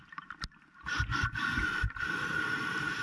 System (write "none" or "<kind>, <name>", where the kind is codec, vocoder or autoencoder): none